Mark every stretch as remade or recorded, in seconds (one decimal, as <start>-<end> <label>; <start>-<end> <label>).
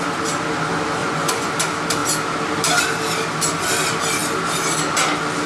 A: 0.0-1.0 recorded; 1.0-1.5 remade; 1.5-5.5 recorded